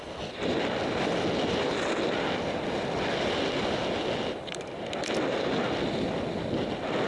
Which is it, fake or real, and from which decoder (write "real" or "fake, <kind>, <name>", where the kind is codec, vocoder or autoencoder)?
real